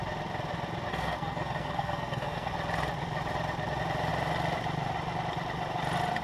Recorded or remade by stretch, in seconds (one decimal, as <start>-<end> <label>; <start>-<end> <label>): 0.0-0.9 recorded; 0.9-2.5 remade; 2.5-6.2 recorded